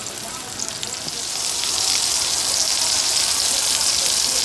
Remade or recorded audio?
recorded